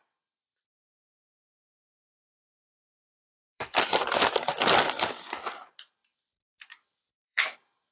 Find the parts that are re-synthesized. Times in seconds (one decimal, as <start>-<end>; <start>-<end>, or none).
0.5-5.2; 6.0-7.9